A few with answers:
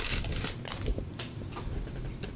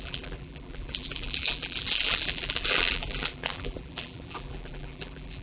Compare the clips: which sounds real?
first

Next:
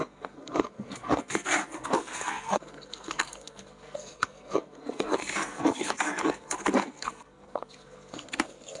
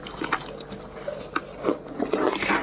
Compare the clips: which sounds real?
second